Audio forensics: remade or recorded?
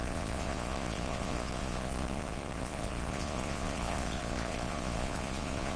remade